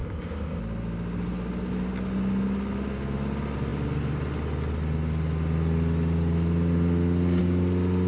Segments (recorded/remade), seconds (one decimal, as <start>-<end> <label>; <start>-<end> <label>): 0.0-0.6 remade; 0.6-8.1 recorded